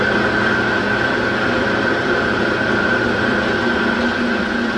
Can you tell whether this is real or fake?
fake